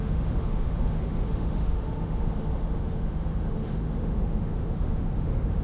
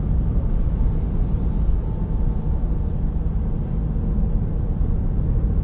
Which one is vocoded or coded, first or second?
first